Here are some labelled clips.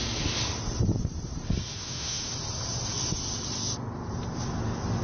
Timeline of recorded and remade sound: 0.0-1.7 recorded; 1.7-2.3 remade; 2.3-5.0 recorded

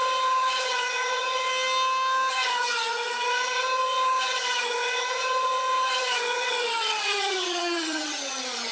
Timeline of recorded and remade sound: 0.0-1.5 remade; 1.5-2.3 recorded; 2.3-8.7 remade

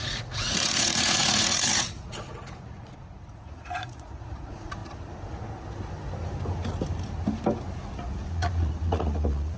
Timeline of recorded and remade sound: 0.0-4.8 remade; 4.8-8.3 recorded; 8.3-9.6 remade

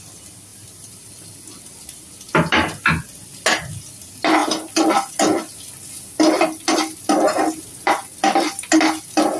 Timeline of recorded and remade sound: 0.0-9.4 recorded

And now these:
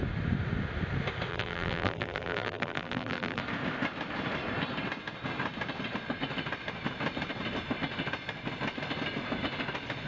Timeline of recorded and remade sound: 0.0-1.3 recorded; 1.3-3.4 remade; 3.4-10.1 recorded

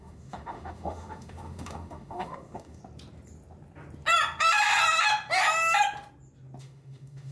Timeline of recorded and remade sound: 0.0-2.8 remade; 2.8-6.6 recorded; 6.6-7.3 remade